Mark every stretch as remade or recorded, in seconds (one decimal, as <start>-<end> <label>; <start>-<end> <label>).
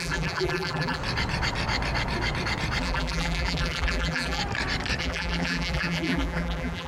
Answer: 0.0-1.0 remade; 1.0-2.8 recorded; 2.8-4.4 remade; 4.4-5.0 recorded; 5.0-6.9 remade